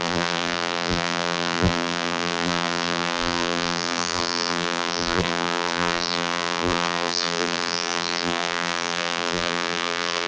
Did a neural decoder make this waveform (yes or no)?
yes